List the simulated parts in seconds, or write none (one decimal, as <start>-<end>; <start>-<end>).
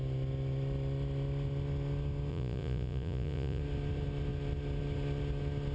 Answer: 2.3-3.6